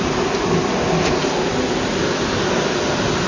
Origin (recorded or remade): recorded